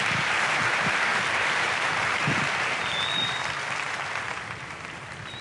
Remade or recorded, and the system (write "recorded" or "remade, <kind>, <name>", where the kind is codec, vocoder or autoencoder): remade, vocoder, BigVGAN v2